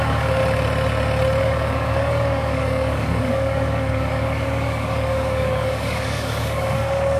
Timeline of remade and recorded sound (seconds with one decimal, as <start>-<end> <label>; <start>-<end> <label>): 0.0-0.4 remade; 0.4-1.4 recorded; 1.4-7.2 remade